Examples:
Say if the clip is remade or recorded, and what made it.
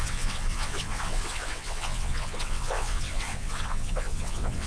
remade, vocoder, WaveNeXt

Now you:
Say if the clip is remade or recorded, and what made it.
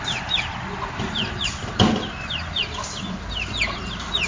recorded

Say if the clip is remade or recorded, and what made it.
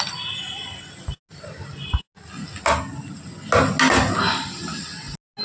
recorded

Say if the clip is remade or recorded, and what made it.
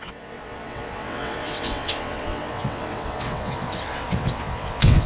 remade, vocoder, WaveNeXt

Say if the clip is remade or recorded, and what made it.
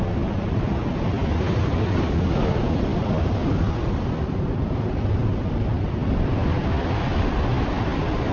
recorded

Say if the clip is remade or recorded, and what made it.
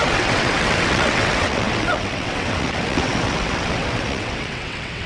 remade, vocoder, WaveNeXt